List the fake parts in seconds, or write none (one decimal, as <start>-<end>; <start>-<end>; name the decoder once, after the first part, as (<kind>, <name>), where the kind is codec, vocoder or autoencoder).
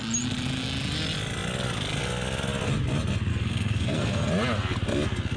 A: 3.3-4.3 (codec, SNAC)